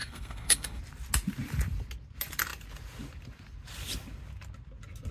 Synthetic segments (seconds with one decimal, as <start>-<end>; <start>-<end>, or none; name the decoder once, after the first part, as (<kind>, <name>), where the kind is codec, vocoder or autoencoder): 0.0-0.8 (codec, SNAC)

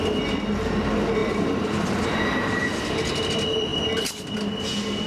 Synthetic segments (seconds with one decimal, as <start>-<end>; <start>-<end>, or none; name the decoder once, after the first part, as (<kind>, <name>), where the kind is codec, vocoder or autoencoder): 1.2-2.6 (vocoder, BigVGAN v2); 3.7-4.3

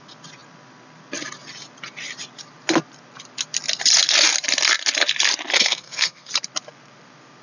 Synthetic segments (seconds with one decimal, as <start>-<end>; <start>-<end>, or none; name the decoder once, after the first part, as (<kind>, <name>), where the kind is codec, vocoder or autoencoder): 5.5-6.3 (codec, SNAC)

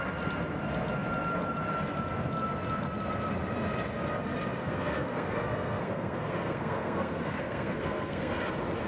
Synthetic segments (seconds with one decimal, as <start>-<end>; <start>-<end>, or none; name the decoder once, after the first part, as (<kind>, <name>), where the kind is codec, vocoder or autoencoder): 4.6-8.3 (codec, SNAC)

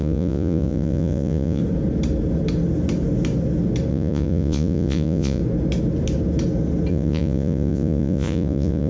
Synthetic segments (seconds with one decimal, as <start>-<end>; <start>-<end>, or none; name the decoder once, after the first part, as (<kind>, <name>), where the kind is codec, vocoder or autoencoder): 0.0-1.6 (vocoder, Vocos); 3.9-5.4; 6.9-8.9

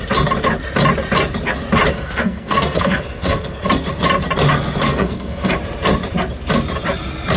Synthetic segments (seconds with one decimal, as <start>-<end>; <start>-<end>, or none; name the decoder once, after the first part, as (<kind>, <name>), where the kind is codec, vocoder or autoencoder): 1.9-3.7 (codec, SNAC); 4.9-5.5

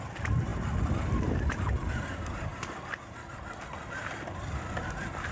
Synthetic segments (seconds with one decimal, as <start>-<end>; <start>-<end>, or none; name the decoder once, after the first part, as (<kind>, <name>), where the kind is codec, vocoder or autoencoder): 2.5-3.0 (vocoder, BigVGAN v2); 4.0-4.6